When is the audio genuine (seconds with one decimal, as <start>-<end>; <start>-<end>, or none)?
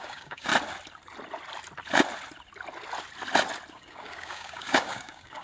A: 0.5-3.7